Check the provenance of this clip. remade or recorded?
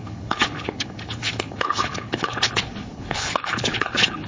remade